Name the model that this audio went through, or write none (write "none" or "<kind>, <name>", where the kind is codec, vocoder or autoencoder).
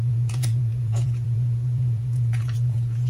vocoder, Vocos